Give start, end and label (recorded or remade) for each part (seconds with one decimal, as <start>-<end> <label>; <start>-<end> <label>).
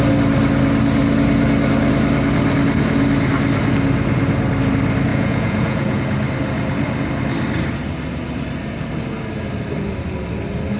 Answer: 0.0-5.1 recorded; 5.1-6.0 remade; 6.0-10.8 recorded